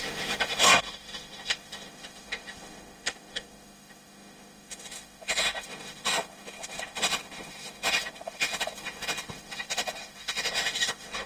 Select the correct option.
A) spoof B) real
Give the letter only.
A